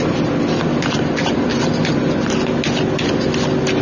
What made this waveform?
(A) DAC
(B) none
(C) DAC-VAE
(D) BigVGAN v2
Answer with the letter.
B